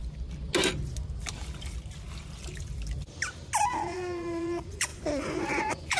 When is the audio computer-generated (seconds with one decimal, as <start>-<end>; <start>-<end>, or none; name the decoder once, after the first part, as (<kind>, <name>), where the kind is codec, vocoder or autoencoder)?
3.6-6.0 (vocoder, Vocos)